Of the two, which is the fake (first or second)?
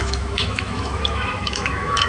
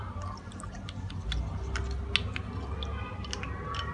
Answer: first